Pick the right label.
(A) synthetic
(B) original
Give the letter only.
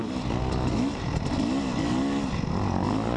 B